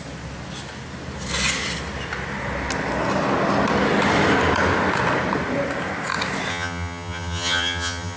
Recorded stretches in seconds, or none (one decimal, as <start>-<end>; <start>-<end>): 0.0-6.5